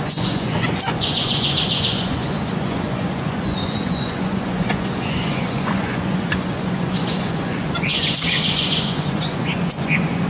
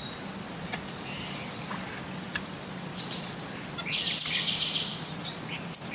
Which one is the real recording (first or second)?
second